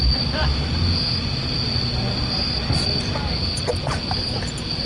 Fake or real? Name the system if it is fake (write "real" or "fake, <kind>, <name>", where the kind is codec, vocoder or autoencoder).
real